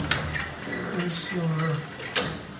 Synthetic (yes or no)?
no